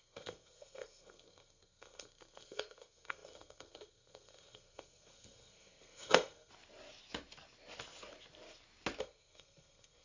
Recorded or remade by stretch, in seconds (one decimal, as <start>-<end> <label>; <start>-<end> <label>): 0.0-6.5 remade; 6.5-9.0 recorded; 9.0-10.0 remade